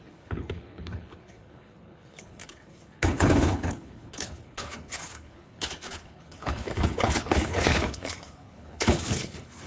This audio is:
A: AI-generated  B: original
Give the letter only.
A